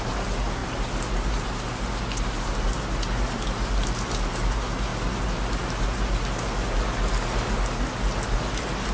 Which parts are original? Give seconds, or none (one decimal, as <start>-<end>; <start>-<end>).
0.0-8.9